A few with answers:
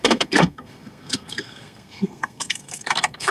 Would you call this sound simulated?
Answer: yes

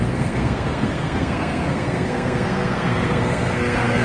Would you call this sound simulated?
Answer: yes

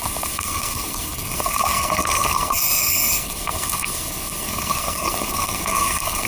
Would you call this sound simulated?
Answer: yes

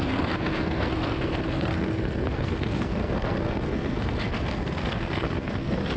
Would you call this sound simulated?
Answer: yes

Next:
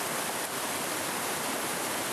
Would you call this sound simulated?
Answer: no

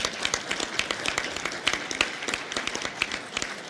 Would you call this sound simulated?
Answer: no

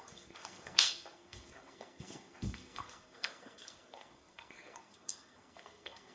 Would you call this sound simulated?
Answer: yes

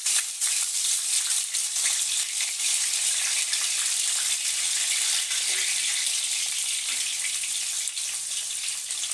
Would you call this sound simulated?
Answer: no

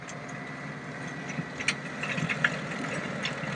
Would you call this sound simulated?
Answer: no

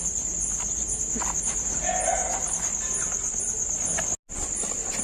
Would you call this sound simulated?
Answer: no